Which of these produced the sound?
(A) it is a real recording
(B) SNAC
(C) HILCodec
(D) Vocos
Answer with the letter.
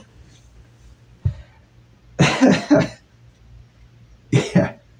A